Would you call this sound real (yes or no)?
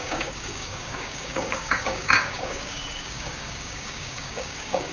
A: no